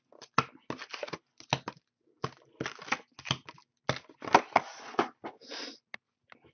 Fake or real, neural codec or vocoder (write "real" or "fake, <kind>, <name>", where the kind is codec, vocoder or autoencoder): real